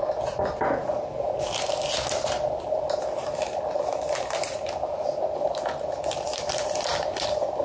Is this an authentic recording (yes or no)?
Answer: yes